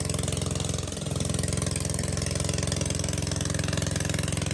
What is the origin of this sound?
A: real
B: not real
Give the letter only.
A